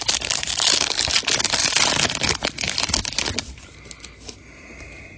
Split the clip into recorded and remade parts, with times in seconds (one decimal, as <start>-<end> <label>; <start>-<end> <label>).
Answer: 0.0-5.2 recorded